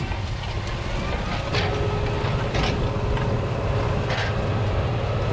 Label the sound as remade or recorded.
recorded